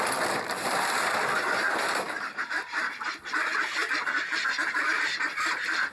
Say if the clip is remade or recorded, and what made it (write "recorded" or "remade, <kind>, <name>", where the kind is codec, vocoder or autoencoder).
remade, vocoder, BigVGAN v2